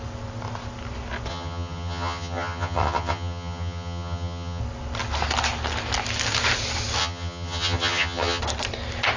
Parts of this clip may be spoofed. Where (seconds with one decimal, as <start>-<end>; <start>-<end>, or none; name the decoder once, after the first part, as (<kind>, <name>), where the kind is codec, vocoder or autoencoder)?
1.3-4.6 (vocoder, HiFi-GAN); 7.0-8.4